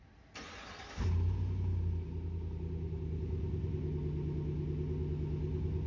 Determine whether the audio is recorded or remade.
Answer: recorded